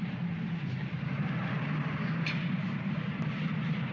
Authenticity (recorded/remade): recorded